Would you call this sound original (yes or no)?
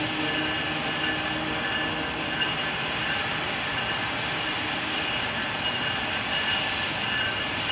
yes